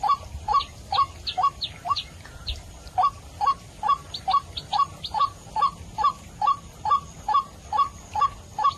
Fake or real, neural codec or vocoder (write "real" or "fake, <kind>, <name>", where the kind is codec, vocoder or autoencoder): real